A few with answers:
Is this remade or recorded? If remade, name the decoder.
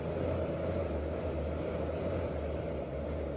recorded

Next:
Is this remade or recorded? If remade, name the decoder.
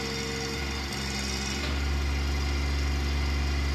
recorded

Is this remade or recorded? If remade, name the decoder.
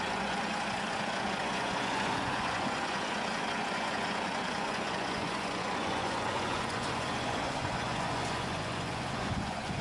remade, vocoder, Vocos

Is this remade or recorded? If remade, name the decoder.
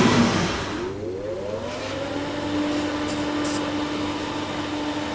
recorded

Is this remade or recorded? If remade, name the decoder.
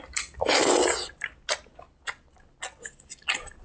recorded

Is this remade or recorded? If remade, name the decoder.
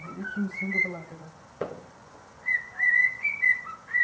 remade, vocoder, Vocos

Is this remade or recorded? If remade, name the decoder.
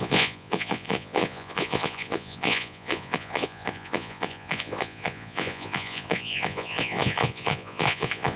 remade, vocoder, Vocos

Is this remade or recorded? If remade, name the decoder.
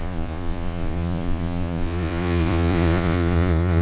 remade, vocoder, Vocos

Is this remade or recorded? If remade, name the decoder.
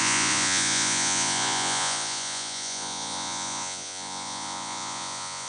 remade, vocoder, Vocos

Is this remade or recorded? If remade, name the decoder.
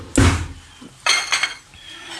recorded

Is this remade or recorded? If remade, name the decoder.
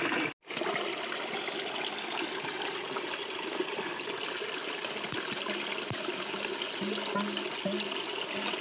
recorded